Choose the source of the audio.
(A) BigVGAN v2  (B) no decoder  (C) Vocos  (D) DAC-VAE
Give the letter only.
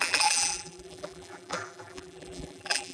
A